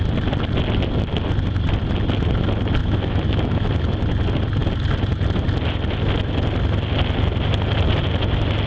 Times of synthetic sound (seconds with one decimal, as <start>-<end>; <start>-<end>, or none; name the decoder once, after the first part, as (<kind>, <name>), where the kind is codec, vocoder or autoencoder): 2.8-3.7 (autoencoder, DAC-VAE)